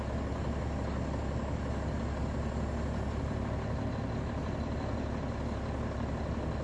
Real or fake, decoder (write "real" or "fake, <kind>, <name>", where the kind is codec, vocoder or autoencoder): real